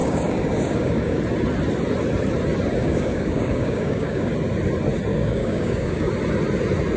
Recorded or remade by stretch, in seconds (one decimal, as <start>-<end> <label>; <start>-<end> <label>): 0.0-1.2 remade; 1.2-2.8 recorded; 2.8-4.3 remade; 4.3-5.1 recorded; 5.1-6.1 remade; 6.1-7.0 recorded